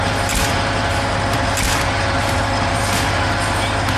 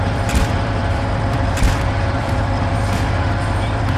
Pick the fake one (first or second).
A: second